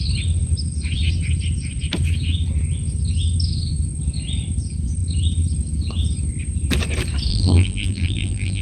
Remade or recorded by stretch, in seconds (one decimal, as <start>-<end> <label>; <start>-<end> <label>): 0.0-7.3 recorded; 7.3-8.6 remade